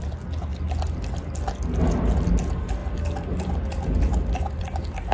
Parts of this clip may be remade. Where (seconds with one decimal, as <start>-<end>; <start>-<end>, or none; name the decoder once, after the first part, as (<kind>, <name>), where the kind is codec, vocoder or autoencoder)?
none